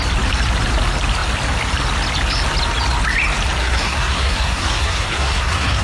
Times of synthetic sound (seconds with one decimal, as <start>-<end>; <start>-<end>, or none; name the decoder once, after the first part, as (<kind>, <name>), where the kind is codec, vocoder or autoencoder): 3.6-5.8 (codec, SNAC)